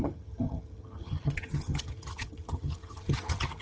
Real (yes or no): no